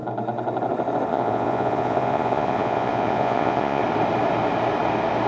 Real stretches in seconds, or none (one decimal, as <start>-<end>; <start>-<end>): 0.0-1.1; 3.8-5.3